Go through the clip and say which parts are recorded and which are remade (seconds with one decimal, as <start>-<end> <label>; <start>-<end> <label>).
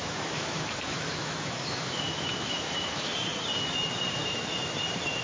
0.0-3.1 remade; 3.1-4.2 recorded; 4.2-4.8 remade; 4.8-5.2 recorded